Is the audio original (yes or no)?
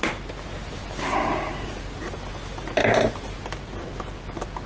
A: yes